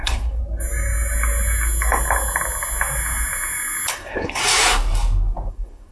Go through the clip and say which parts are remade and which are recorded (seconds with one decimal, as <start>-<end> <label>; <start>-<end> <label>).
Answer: 0.0-0.4 remade; 0.4-3.9 recorded; 3.9-4.4 remade; 4.4-5.5 recorded; 5.5-5.9 remade